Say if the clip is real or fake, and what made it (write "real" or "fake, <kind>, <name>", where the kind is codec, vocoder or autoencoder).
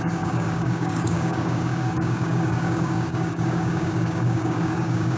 fake, codec, DAC